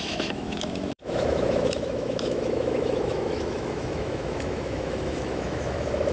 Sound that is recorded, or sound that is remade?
remade